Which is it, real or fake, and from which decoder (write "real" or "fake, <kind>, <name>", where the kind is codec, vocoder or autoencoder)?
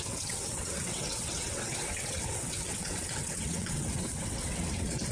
fake, vocoder, WaveNeXt